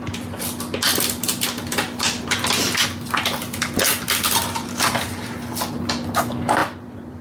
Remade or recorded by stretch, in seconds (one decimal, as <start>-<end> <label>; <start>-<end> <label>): 0.0-6.6 recorded; 6.6-7.2 remade